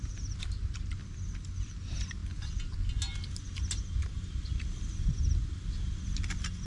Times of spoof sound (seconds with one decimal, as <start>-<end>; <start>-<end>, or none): none